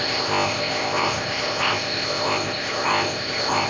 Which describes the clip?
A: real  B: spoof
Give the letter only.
B